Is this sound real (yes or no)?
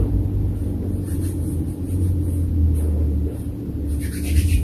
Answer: yes